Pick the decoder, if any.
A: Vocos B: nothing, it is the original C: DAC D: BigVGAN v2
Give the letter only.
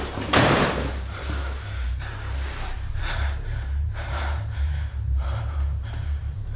D